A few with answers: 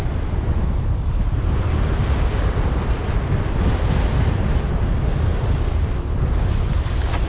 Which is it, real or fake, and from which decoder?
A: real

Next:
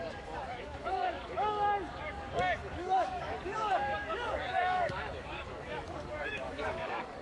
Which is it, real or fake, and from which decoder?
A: fake, codec, DAC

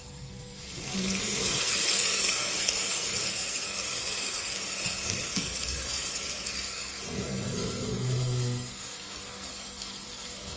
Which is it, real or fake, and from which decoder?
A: fake, codec, SNAC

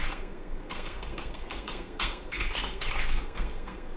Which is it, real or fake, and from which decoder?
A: fake, codec, SNAC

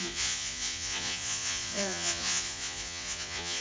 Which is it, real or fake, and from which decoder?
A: fake, vocoder, Vocos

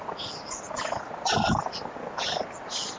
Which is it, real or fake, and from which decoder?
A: real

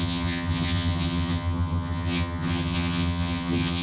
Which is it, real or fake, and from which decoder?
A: fake, vocoder, HiFi-GAN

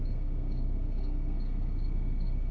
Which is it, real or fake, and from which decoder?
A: fake, codec, SNAC